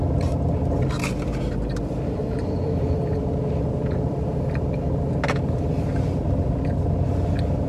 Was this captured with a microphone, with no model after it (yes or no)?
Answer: yes